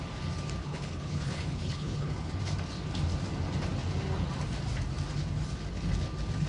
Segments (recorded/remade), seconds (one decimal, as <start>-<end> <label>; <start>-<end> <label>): 0.0-0.6 recorded; 0.6-2.3 remade; 2.3-6.5 recorded

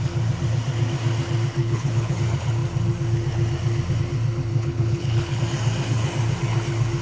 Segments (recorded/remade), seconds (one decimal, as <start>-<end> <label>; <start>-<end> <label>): 0.0-1.6 recorded; 1.6-2.2 remade; 2.2-4.5 recorded; 4.5-5.4 remade; 5.4-7.0 recorded

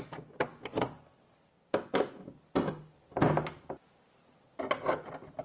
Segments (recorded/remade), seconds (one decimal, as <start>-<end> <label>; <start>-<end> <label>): 0.0-5.4 recorded